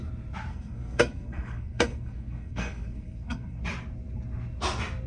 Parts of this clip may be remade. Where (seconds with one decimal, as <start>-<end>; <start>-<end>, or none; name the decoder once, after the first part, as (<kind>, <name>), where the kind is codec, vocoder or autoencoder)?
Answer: 0.5-3.6 (codec, SNAC)